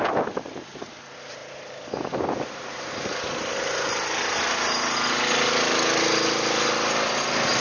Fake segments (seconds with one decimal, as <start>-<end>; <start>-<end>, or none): none

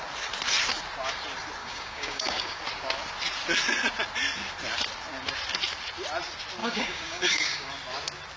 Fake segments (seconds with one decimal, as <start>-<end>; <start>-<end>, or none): 1.6-2.6; 6.6-7.7